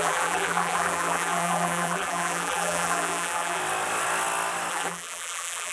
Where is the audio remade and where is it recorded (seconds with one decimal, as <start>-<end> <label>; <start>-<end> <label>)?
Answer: 0.0-3.6 remade; 3.6-4.7 recorded; 4.7-5.7 remade